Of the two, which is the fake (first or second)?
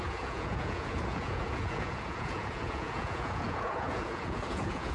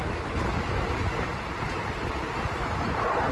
first